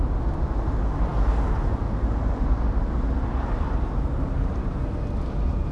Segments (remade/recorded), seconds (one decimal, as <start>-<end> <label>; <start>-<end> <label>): 0.0-5.7 recorded